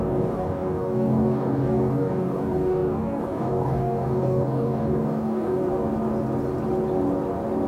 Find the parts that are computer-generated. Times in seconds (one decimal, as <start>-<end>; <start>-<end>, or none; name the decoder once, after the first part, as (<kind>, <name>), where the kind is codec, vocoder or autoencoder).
0.0-5.7 (codec, DAC)

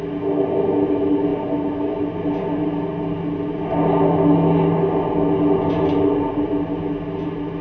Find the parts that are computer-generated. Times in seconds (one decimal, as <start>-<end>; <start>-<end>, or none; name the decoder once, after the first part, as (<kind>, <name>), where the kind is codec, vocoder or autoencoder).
none

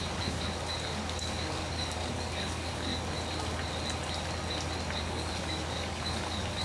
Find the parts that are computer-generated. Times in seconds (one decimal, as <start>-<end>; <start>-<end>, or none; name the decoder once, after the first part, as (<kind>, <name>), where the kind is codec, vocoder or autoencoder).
0.0-2.9 (codec, DAC); 5.0-6.6

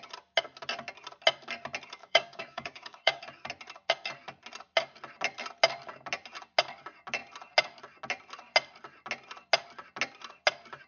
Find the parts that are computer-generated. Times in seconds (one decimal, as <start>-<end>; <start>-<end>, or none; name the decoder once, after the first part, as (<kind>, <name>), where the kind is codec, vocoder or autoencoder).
2.0-3.2 (codec, DAC)

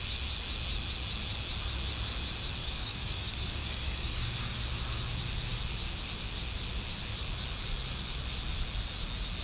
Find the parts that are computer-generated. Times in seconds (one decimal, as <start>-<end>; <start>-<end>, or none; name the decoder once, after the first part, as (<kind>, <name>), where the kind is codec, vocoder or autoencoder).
2.6-4.6 (codec, DAC)

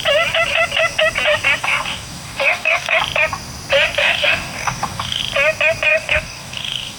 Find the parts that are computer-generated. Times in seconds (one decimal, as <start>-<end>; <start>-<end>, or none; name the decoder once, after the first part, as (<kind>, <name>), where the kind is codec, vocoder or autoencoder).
1.6-3.0 (codec, DAC); 4.0-5.2; 5.9-7.0